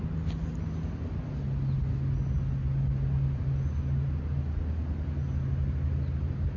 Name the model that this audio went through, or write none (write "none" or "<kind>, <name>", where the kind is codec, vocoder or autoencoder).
none